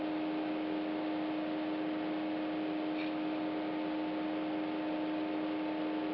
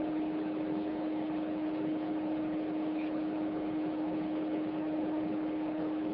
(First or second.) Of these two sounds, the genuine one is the first